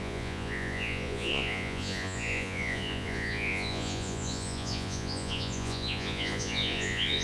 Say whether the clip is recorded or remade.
remade